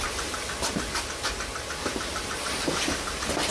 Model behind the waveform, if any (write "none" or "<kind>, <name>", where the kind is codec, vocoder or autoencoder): none